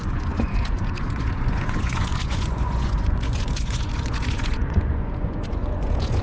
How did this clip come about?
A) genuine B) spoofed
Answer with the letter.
B